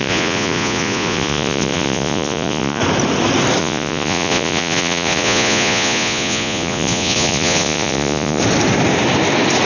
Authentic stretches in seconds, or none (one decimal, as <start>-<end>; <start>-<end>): 2.8-3.6; 8.4-9.7